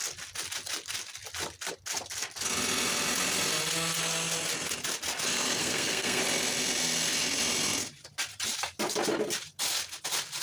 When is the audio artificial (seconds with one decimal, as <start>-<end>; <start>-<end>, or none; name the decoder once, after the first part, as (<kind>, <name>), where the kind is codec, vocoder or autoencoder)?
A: 5.6-6.2 (codec, SNAC)